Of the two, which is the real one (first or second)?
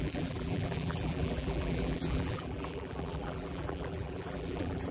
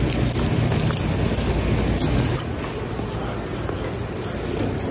second